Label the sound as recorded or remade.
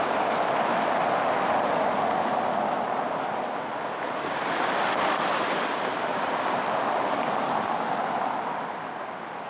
recorded